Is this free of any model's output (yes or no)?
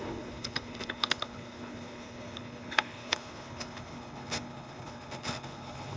no